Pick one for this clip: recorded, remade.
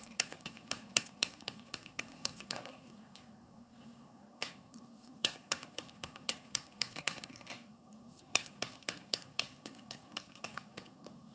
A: remade